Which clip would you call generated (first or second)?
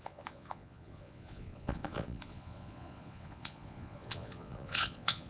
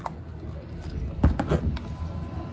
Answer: first